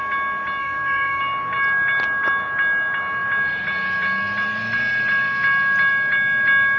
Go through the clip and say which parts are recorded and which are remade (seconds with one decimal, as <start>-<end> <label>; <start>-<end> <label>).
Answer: 0.0-0.6 recorded; 0.6-1.2 remade; 1.2-6.8 recorded